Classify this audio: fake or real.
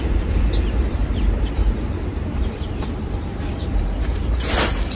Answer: fake